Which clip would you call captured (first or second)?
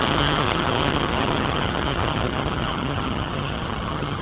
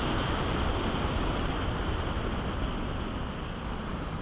second